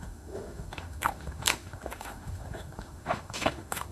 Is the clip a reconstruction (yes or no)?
yes